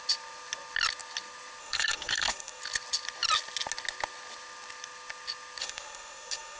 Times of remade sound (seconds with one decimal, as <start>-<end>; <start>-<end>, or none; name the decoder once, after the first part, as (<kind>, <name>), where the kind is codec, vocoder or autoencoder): 1.6-2.6 (codec, SNAC); 5.6-6.6